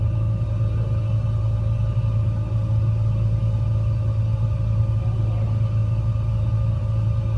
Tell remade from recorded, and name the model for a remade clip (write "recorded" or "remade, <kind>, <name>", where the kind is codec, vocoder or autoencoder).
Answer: recorded